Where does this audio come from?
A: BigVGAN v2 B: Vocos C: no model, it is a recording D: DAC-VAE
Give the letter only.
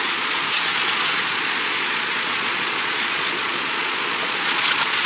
B